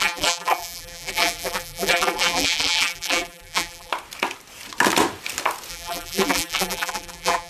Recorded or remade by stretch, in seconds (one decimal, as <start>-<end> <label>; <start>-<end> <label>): 0.0-3.9 remade; 3.9-5.7 recorded; 5.7-7.5 remade